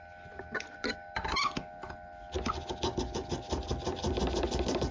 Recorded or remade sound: recorded